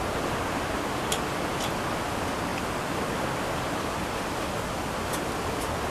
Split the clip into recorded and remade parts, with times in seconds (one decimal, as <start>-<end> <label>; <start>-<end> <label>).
0.0-5.9 recorded